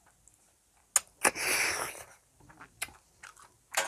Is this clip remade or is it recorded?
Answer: recorded